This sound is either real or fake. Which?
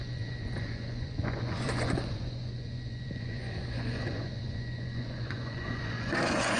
fake